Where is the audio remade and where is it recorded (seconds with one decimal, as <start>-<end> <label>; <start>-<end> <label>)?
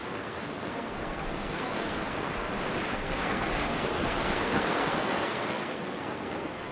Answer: 0.0-2.5 remade; 2.5-2.9 recorded; 2.9-6.7 remade